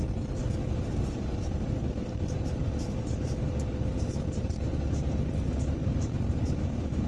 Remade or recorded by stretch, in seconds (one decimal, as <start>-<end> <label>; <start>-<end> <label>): 0.0-0.4 remade; 0.4-1.0 recorded; 1.0-7.1 remade